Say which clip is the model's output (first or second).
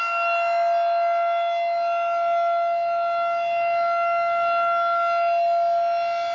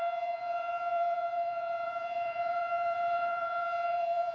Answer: second